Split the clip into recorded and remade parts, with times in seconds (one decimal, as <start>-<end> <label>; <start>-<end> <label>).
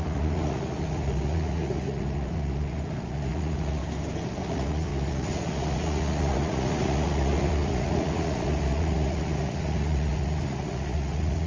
0.0-3.8 remade; 3.8-4.3 recorded; 4.3-11.5 remade